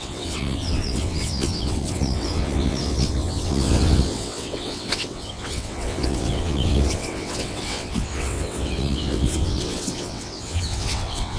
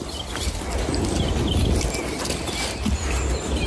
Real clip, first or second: second